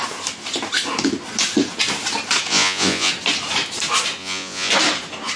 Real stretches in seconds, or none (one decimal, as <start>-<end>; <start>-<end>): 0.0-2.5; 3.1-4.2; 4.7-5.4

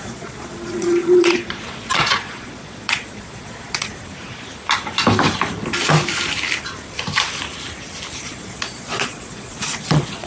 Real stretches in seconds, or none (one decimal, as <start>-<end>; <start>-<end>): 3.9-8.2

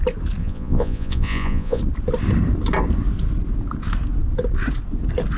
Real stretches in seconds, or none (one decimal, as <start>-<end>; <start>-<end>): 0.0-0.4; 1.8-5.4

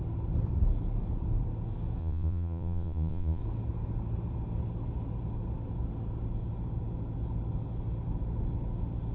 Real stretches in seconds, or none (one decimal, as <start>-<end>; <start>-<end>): 0.0-2.0; 3.4-9.1

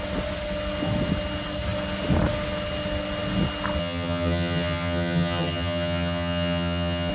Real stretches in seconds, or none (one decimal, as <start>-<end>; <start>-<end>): 0.0-3.8

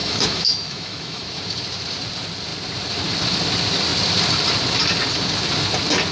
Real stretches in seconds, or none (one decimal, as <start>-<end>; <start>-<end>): 1.3-6.1